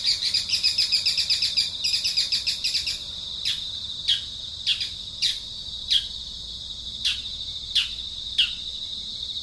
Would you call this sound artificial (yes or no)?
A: no